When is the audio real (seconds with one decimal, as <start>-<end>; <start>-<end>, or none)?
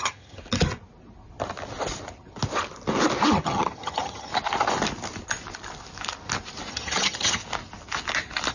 0.4-3.3; 4.3-6.7; 7.4-8.5